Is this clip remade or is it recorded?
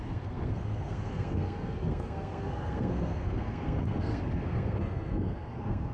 remade